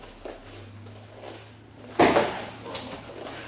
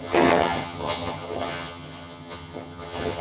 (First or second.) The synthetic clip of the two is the second